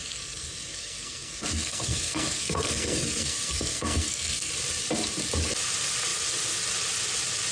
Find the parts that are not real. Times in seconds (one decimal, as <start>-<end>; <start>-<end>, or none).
0.0-4.5